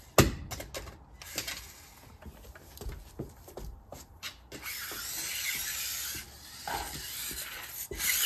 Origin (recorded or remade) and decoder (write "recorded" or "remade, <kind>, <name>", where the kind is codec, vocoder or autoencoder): recorded